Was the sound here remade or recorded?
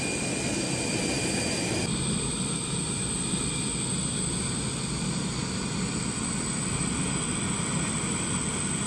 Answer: recorded